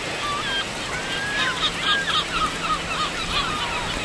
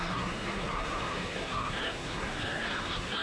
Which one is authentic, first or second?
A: first